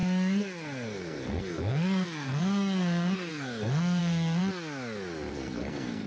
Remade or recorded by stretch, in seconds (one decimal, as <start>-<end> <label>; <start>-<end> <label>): 0.0-4.4 remade; 4.4-5.3 recorded; 5.3-6.1 remade